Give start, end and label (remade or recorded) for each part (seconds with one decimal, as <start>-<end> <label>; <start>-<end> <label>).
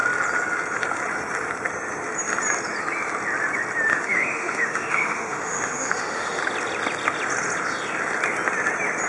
0.0-3.9 recorded; 3.9-6.4 remade; 6.4-9.1 recorded